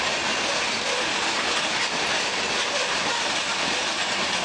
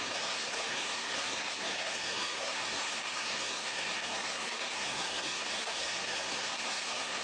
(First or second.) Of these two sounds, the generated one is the second